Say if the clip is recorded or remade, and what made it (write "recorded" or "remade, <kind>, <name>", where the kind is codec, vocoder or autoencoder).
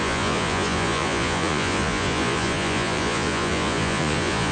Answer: remade, vocoder, Vocos